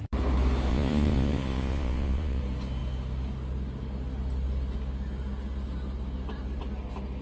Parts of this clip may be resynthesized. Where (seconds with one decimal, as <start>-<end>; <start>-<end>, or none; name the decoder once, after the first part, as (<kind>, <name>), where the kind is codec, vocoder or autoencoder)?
0.7-2.4 (vocoder, Vocos)